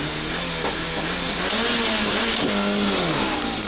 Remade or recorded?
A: recorded